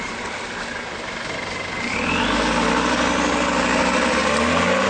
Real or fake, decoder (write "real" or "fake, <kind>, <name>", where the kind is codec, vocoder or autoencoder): real